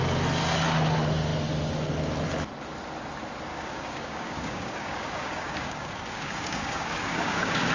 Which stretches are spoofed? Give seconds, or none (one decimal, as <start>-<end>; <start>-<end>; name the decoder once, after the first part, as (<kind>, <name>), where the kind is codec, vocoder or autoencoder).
3.5-7.7 (codec, DAC)